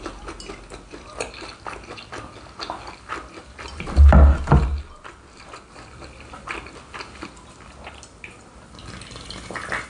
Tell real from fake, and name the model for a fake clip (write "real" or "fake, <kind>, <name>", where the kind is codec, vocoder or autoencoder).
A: real